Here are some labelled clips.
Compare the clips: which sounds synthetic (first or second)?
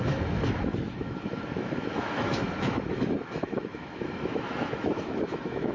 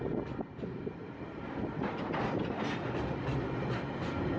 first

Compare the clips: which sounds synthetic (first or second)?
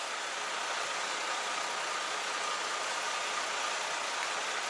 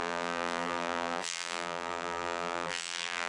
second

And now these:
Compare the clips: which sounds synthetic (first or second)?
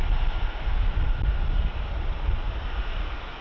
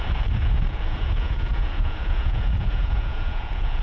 second